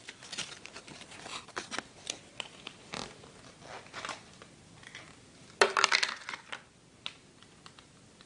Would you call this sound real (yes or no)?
yes